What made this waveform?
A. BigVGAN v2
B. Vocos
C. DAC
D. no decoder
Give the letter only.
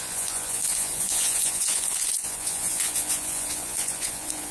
B